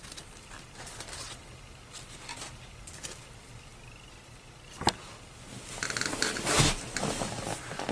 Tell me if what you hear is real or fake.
real